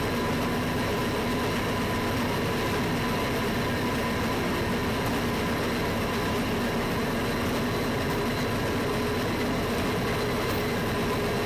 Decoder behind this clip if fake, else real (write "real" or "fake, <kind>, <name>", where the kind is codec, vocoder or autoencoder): real